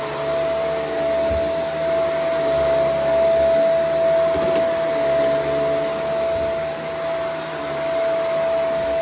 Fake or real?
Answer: real